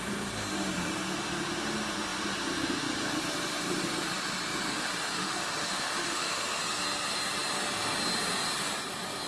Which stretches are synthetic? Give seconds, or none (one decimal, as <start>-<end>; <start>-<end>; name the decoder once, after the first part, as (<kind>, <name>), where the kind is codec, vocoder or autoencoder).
4.7-6.6 (autoencoder, DAC-VAE)